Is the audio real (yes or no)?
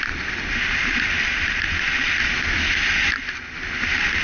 yes